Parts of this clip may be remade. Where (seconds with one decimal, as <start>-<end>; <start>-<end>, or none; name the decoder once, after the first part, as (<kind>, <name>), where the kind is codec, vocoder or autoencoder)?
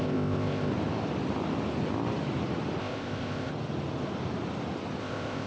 0.0-0.7 (codec, ZipCodec); 2.8-3.5; 5.0-5.5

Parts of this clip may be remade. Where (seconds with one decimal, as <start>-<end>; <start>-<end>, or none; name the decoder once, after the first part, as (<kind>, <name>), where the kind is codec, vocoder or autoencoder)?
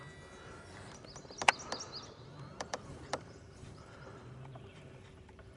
2.3-5.6 (vocoder, BigVGAN v2)